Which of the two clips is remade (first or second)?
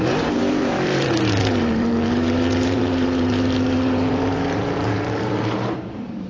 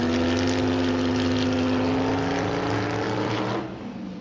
first